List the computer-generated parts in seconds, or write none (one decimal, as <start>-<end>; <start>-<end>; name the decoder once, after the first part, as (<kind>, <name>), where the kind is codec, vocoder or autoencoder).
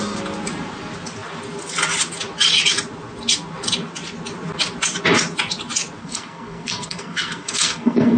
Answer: 6.0-8.2 (codec, SNAC)